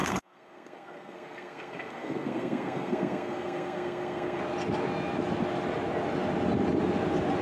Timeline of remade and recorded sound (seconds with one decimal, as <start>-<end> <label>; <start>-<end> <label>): 0.0-4.4 remade; 4.4-7.4 recorded